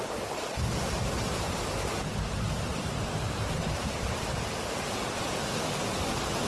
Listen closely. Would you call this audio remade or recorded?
remade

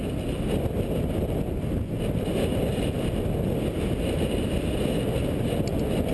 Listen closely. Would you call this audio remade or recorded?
recorded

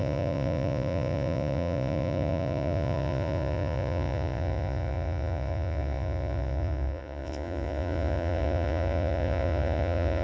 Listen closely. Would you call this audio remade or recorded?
remade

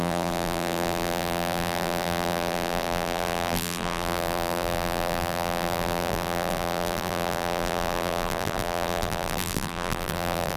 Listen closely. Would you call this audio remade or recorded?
remade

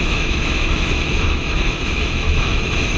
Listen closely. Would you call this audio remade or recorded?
remade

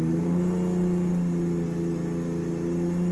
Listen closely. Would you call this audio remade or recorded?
recorded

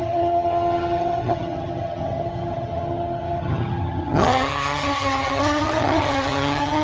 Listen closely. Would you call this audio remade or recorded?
remade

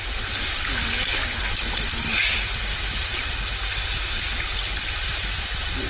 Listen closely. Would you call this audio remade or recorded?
recorded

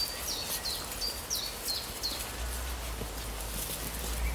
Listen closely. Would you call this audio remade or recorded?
recorded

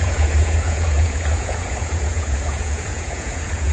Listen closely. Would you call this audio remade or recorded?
remade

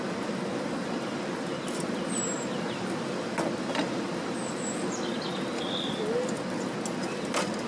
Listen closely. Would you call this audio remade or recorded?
recorded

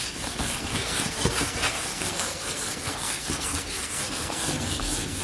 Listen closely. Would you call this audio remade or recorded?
remade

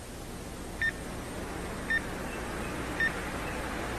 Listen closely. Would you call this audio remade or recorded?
recorded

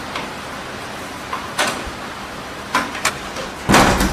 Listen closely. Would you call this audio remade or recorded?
recorded